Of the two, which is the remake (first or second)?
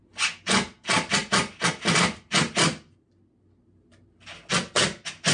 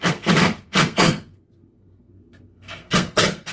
second